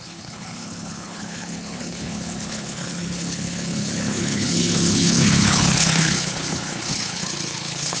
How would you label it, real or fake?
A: fake